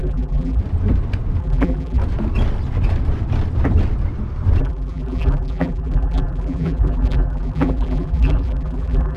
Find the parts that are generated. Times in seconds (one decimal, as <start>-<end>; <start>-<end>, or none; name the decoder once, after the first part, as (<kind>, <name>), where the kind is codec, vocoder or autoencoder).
0.0-0.6 (vocoder, BigVGAN v2); 1.4-2.0; 4.6-9.2